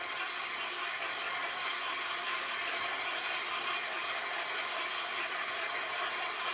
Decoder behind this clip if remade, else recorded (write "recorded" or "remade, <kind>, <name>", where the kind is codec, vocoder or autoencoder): recorded